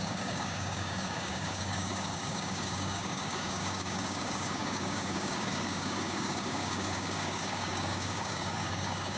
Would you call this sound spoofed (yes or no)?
yes